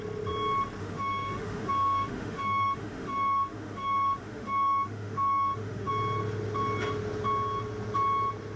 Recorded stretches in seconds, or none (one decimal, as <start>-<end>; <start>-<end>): 0.0-0.8; 5.9-8.6